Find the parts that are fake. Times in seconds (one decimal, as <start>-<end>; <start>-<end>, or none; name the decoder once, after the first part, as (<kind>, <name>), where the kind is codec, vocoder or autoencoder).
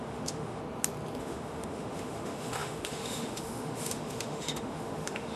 0.0-0.6 (autoencoder, DAC-VAE); 1.2-5.4